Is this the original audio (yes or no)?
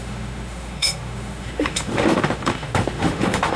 no